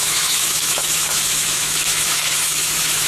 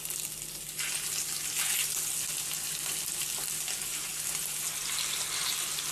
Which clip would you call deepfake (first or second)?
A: first